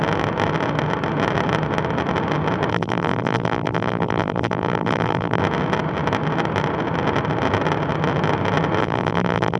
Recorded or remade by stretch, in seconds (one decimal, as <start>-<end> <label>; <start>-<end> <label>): 0.0-2.7 recorded; 2.7-5.4 remade; 5.4-8.8 recorded; 8.8-9.6 remade